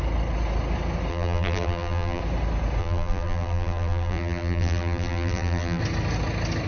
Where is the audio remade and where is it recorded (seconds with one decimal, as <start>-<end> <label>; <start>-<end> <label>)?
0.0-1.1 recorded; 1.1-2.2 remade; 2.2-2.8 recorded; 2.8-5.8 remade; 5.8-6.7 recorded